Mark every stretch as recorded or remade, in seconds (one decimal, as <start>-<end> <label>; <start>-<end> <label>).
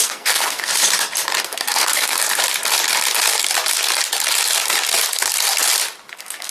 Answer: 0.0-0.7 remade; 0.7-1.4 recorded; 1.4-2.2 remade; 2.2-6.1 recorded; 6.1-6.5 remade